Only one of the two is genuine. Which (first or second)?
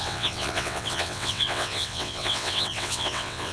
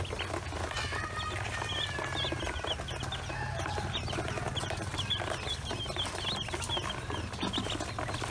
second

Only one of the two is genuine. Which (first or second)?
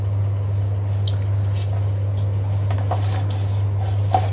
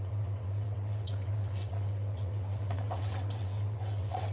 first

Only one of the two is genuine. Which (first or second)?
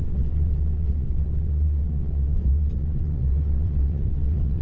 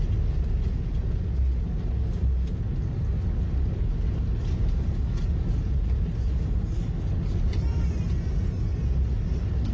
second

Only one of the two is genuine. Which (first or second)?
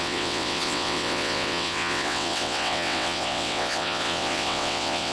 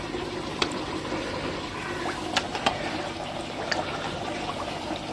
second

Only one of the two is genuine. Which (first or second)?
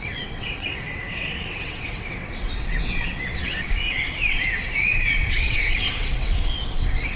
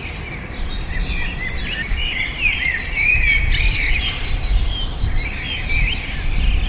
second